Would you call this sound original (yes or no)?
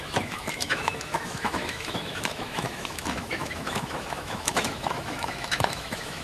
no